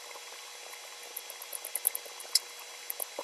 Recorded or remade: recorded